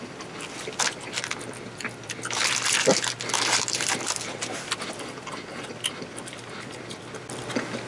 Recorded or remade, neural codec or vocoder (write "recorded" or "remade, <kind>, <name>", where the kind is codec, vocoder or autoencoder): recorded